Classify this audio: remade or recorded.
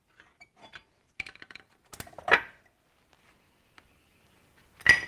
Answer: recorded